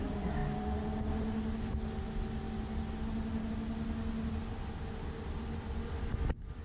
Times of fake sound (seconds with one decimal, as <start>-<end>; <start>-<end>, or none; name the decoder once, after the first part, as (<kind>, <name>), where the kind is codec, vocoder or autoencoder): none